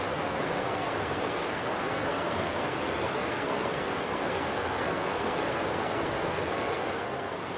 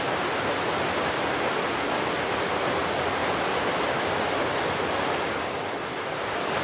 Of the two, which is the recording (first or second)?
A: second